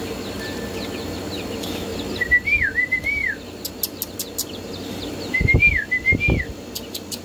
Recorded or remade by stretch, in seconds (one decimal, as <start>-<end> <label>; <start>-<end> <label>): 0.0-7.2 recorded